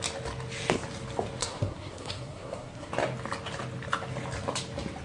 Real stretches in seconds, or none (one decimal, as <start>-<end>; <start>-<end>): 0.0-1.4; 2.9-5.0